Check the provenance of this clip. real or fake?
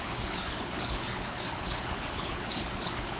fake